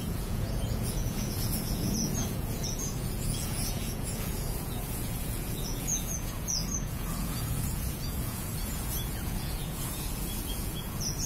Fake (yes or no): yes